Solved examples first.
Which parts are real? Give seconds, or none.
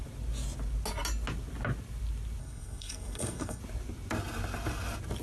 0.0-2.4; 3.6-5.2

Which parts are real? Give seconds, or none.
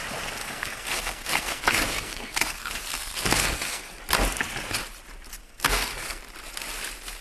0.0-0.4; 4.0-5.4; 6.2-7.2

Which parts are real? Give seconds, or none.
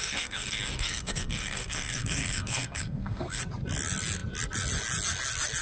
3.4-5.6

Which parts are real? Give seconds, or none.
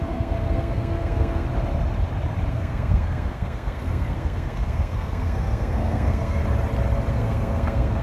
1.5-2.5; 6.4-7.1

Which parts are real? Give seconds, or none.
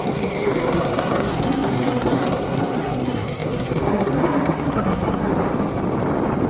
5.3-6.5